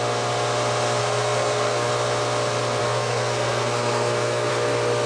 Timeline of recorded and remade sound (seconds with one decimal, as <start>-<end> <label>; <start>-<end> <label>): 0.0-1.0 recorded; 1.0-1.9 remade; 1.9-2.8 recorded; 2.8-4.5 remade; 4.5-5.1 recorded